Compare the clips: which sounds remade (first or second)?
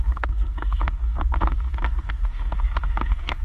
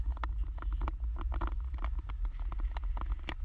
first